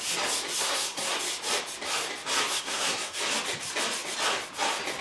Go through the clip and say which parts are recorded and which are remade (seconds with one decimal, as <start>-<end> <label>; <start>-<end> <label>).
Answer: 0.0-0.6 recorded; 0.6-1.2 remade; 1.2-2.5 recorded; 2.5-3.2 remade; 3.2-5.0 recorded

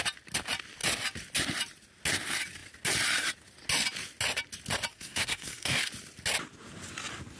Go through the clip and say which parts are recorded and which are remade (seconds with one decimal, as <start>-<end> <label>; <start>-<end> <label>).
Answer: 0.0-4.9 recorded; 4.9-5.9 remade; 5.9-7.4 recorded

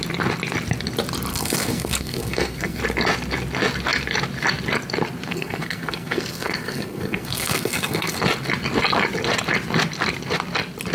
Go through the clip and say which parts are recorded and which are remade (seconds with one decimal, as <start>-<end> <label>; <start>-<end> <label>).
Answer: 0.0-1.3 recorded; 1.3-2.8 remade; 2.8-5.3 recorded; 5.3-8.2 remade; 8.2-10.9 recorded

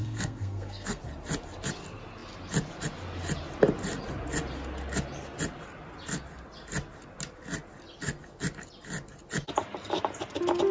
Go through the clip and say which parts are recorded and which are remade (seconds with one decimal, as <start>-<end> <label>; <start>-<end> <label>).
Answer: 0.0-1.0 remade; 1.0-10.7 recorded

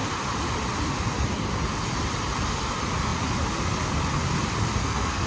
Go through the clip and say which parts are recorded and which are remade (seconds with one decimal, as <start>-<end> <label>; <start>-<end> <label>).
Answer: 0.0-4.8 recorded; 4.8-5.3 remade

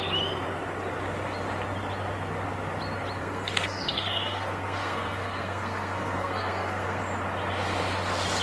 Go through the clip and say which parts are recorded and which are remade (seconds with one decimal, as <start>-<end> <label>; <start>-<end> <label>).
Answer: 0.0-3.2 recorded; 3.2-7.0 remade; 7.0-8.4 recorded

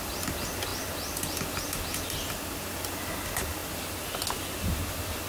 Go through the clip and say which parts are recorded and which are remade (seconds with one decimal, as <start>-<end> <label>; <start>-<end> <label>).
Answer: 0.0-5.3 recorded

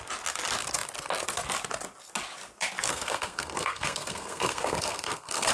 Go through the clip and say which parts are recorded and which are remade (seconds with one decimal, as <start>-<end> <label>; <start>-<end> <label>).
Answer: 0.0-2.9 recorded; 2.9-5.5 remade